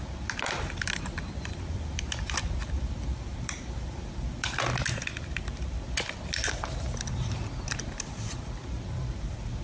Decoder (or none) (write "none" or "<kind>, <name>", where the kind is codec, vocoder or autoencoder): vocoder, BigVGAN v2